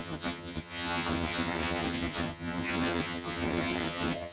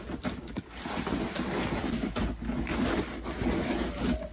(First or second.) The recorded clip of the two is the second